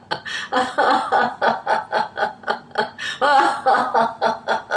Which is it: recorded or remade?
recorded